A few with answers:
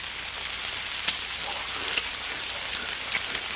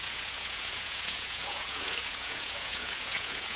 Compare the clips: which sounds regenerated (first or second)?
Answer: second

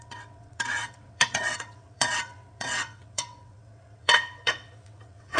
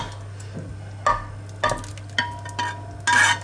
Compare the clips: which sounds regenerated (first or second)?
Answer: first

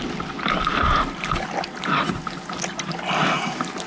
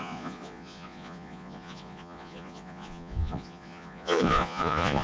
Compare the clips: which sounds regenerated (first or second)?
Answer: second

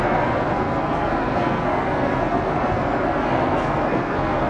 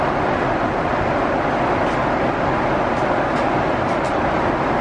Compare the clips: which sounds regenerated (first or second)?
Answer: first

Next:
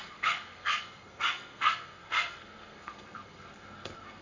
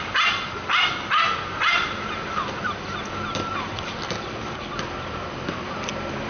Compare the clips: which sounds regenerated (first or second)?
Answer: first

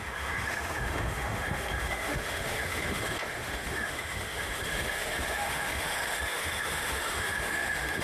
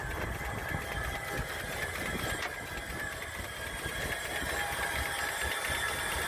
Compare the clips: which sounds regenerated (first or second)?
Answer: first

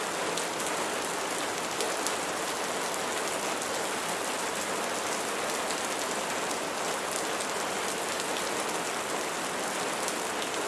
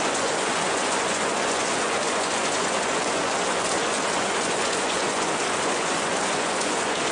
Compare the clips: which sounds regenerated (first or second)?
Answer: second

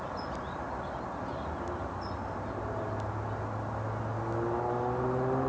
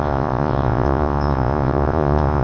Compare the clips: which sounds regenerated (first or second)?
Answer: second